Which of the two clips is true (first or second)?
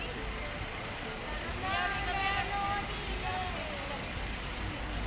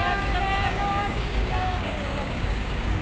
first